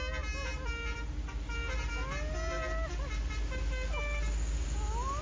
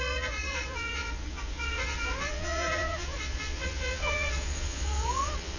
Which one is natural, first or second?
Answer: first